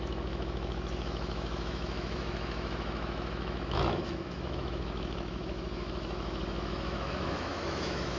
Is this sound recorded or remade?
remade